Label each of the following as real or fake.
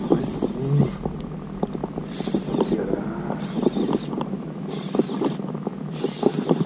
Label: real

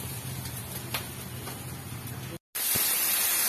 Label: real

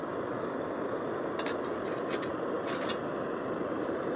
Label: fake